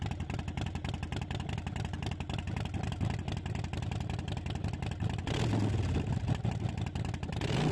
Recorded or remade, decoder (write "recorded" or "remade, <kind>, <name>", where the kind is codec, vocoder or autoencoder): recorded